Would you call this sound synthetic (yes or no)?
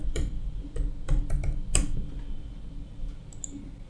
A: no